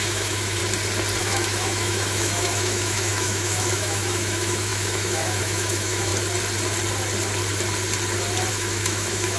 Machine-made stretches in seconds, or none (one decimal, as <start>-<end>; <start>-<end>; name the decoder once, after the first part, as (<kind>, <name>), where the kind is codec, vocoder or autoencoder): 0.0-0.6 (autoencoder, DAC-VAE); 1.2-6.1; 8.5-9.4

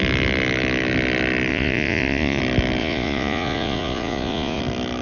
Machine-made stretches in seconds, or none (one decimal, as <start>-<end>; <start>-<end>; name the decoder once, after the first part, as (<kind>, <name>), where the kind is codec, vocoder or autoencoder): 1.5-2.4 (vocoder, Vocos); 2.8-4.6

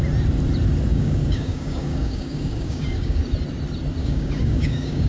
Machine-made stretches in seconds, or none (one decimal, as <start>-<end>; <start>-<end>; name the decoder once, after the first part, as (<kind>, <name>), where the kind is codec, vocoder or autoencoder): 0.9-3.2 (codec, DAC); 4.0-5.1

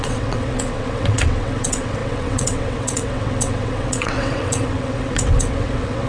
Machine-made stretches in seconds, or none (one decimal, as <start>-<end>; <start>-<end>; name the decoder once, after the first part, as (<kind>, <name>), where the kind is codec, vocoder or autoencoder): 0.0-6.1 (vocoder, WaveNeXt)